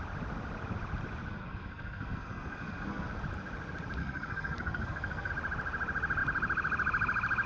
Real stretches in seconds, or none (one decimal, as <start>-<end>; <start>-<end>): 0.0-1.3; 3.2-4.0; 5.3-7.5